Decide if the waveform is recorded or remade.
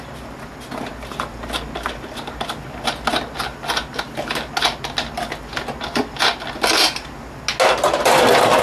recorded